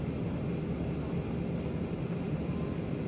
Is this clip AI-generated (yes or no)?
no